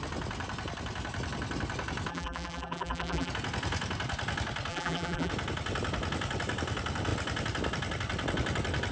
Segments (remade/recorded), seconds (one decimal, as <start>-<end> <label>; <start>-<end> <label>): 0.0-2.1 recorded; 2.1-3.3 remade; 3.3-4.7 recorded; 4.7-5.3 remade; 5.3-8.9 recorded